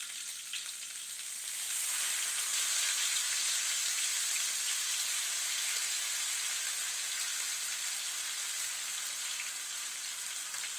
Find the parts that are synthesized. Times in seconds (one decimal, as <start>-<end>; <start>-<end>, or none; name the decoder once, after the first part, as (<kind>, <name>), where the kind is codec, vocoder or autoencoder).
none